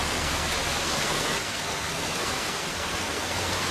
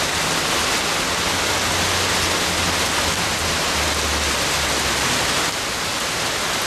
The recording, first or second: second